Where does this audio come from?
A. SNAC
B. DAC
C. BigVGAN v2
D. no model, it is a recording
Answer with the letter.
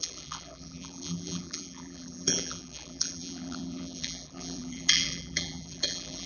C